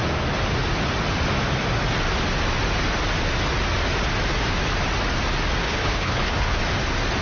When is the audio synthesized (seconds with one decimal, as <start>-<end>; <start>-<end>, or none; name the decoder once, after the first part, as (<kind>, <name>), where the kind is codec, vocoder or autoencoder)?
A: 5.6-6.6 (codec, HILCodec)